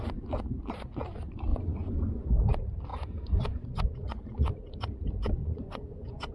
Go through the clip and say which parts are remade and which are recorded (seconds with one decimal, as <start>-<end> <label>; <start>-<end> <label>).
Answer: 0.0-1.5 recorded; 1.5-2.3 remade; 2.3-2.9 recorded; 2.9-4.2 remade; 4.2-5.4 recorded; 5.4-6.3 remade